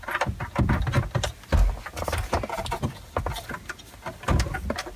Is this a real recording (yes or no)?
yes